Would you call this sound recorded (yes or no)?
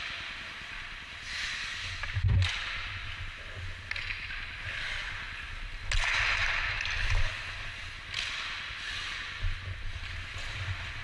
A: yes